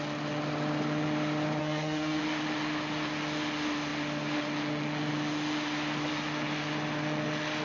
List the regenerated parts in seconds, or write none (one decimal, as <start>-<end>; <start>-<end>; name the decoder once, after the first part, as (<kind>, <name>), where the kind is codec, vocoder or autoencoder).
1.6-2.2 (codec, SNAC)